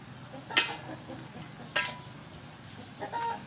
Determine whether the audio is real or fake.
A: real